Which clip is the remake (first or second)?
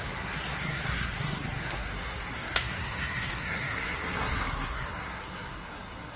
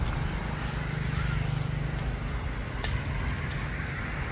first